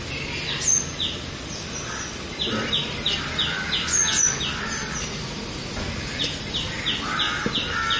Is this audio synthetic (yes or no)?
no